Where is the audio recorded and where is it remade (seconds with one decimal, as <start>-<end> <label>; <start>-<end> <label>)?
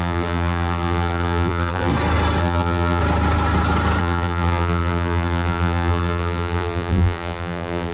0.0-1.9 remade; 1.9-2.4 recorded; 2.4-3.0 remade; 3.0-4.0 recorded; 4.0-7.9 remade